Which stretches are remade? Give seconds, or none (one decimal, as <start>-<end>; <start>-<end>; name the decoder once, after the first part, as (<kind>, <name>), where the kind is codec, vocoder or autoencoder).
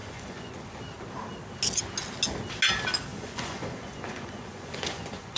0.0-0.8 (vocoder, Vocos); 3.1-5.4